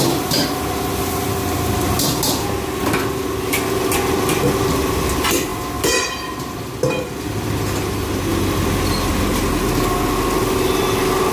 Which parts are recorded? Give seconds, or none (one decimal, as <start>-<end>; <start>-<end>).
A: 0.0-5.5; 6.7-11.3